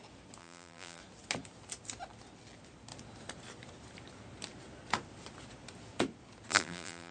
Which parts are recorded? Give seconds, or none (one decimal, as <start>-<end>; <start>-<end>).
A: 0.0-0.4; 1.0-6.5